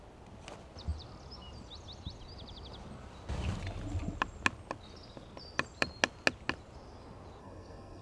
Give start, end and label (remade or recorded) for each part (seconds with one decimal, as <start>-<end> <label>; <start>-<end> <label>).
0.0-7.4 recorded; 7.4-8.0 remade